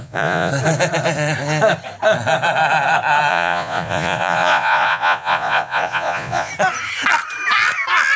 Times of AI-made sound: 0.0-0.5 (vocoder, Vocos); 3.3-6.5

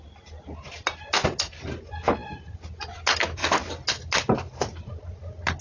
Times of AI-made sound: none

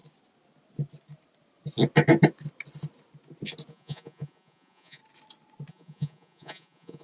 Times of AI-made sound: 3.7-5.0 (vocoder, Vocos); 5.7-7.0

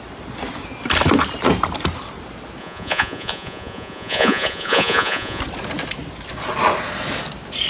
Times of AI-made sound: 2.6-5.4 (vocoder, Vocos)

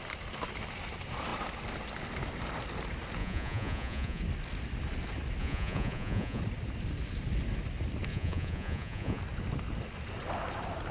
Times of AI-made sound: 3.2-4.2 (vocoder, Vocos); 5.4-6.4; 8.1-9.2